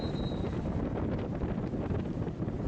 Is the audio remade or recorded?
recorded